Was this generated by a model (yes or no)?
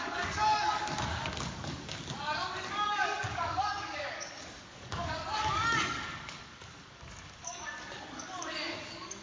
yes